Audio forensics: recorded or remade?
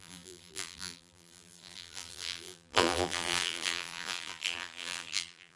remade